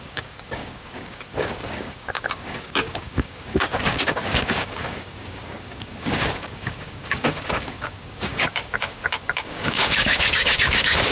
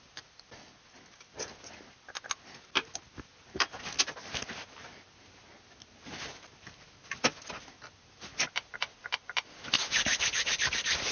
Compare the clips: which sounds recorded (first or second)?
second